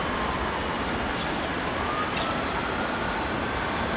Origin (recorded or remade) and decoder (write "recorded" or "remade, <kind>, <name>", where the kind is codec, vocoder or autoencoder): recorded